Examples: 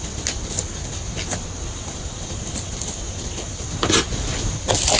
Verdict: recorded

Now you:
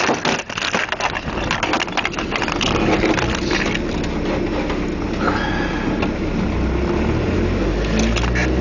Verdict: recorded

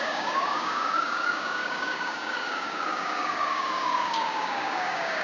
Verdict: remade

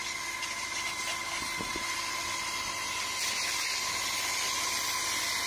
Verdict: recorded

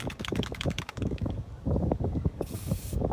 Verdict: remade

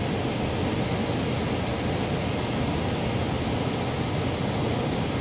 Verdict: recorded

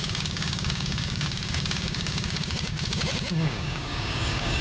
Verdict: remade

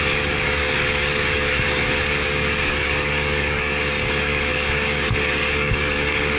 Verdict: remade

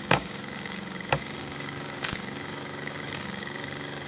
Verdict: remade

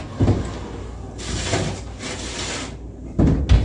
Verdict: recorded